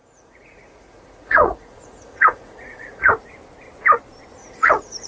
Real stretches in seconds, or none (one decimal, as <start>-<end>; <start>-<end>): 3.1-4.4